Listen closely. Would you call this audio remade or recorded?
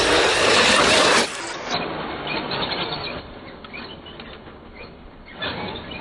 recorded